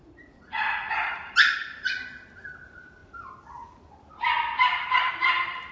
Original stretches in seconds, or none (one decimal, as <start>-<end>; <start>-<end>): 0.9-5.7